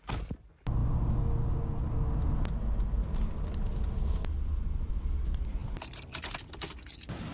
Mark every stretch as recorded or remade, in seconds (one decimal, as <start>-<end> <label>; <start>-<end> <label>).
0.0-7.3 recorded